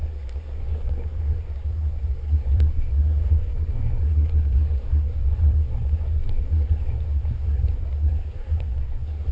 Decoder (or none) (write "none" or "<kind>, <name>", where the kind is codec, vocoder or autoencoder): codec, SNAC